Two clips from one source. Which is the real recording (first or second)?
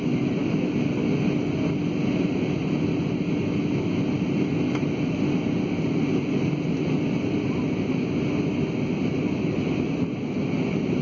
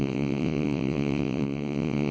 first